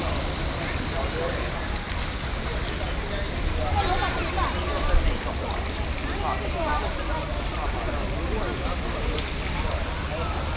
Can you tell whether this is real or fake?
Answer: real